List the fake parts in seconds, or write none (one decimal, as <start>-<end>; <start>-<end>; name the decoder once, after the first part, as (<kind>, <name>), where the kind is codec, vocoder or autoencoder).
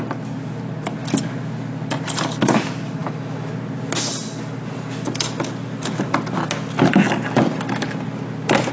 3.0-3.5 (autoencoder, DAC-VAE)